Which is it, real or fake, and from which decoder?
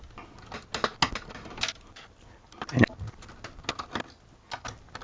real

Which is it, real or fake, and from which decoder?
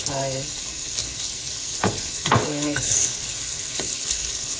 fake, codec, SNAC